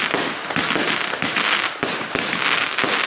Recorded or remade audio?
recorded